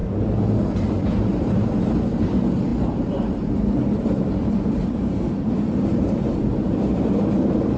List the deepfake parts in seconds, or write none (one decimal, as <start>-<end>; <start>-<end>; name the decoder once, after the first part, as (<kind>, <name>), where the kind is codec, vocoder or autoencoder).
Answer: 0.0-1.7 (vocoder, BigVGAN v2); 2.7-7.8